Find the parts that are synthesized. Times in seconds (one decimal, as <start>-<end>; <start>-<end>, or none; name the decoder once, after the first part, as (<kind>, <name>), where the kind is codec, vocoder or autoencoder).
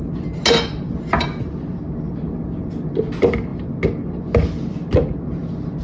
none